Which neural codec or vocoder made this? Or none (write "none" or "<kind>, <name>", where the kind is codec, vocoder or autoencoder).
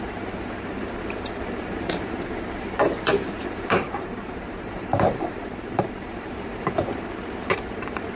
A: vocoder, BigVGAN v2